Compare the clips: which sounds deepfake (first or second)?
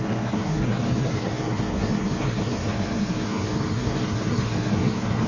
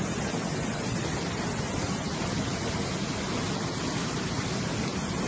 first